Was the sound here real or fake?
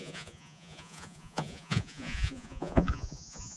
fake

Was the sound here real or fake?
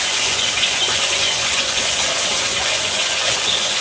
fake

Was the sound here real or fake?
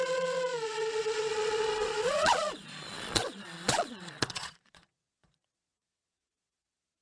fake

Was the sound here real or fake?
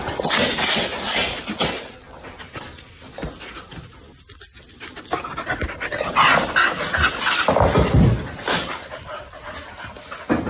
real